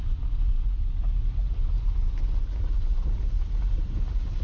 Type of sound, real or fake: real